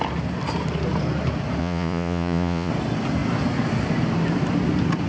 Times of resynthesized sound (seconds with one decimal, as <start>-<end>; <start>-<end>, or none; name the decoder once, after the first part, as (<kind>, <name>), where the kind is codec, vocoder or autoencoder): 1.6-2.7 (vocoder, Vocos)